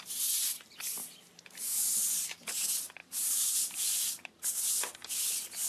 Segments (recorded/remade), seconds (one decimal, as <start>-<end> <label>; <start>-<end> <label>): 0.0-1.0 recorded; 1.0-1.9 remade; 1.9-3.0 recorded; 3.0-4.6 remade; 4.6-5.7 recorded